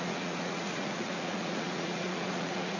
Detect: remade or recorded remade